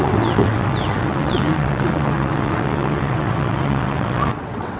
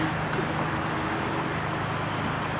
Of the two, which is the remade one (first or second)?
first